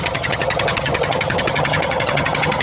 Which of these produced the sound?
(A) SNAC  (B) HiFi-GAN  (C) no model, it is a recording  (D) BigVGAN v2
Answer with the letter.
B